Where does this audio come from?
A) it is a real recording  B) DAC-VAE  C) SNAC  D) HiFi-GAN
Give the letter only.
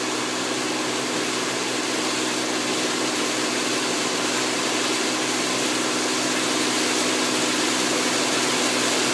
A